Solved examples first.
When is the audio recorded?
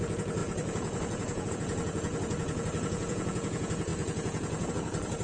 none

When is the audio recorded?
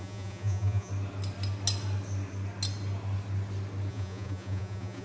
0.9-3.9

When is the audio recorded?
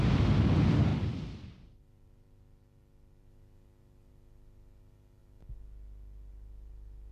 0.0-0.9; 3.3-7.1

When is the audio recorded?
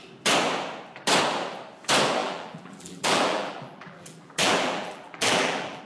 0.0-2.2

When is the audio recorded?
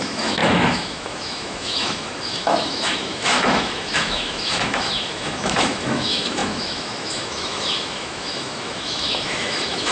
none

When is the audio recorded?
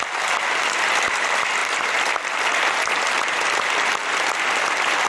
0.0-5.1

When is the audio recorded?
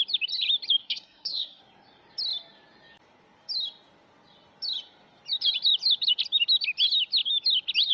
0.0-0.8; 1.6-7.9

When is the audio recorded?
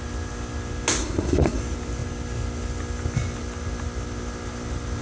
0.0-1.0; 1.6-5.0